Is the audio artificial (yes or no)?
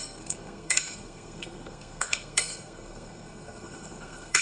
yes